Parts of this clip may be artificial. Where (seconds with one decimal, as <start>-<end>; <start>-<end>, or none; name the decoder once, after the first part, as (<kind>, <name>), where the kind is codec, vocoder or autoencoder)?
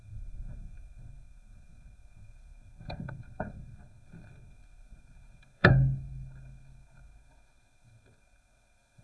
0.0-9.0 (codec, SNAC)